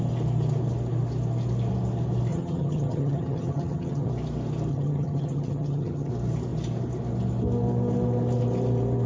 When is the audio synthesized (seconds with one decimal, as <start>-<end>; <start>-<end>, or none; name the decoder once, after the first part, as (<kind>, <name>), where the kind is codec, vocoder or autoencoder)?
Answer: 2.3-4.1 (vocoder, HiFi-GAN); 4.7-6.1